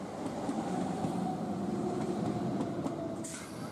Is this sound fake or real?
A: real